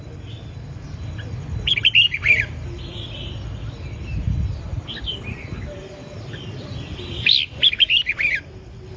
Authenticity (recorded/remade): recorded